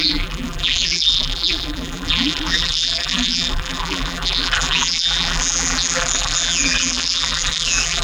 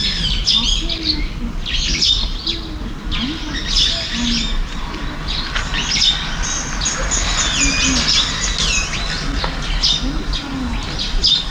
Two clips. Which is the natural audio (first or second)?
second